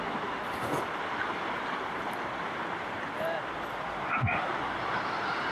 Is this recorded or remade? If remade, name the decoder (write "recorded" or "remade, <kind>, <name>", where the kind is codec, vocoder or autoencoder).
recorded